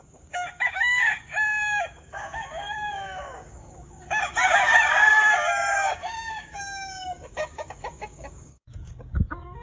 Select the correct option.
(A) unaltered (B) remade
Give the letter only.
B